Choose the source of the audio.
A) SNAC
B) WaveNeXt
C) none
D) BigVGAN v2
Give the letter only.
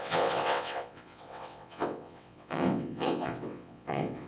B